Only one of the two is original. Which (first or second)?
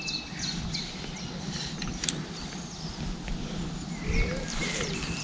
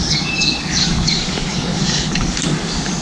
first